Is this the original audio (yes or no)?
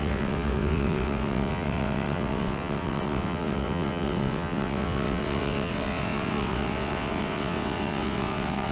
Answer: no